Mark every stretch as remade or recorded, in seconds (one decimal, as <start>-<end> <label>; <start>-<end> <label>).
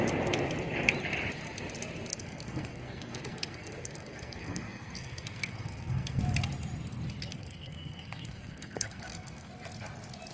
0.0-2.1 recorded; 2.1-6.2 remade; 6.2-7.3 recorded; 7.3-9.5 remade; 9.5-10.3 recorded